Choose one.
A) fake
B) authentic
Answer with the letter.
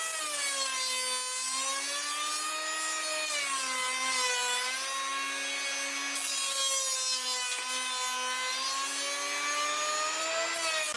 B